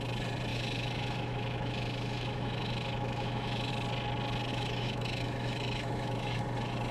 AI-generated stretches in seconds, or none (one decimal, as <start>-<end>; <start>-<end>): 0.5-3.7; 4.5-6.4